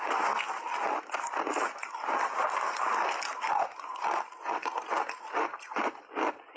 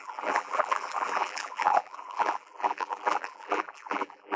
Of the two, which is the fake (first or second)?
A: second